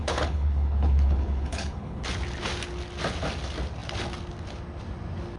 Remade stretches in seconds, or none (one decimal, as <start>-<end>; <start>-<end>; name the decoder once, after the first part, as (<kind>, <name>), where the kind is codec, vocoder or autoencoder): 0.0-2.0 (codec, HILCodec)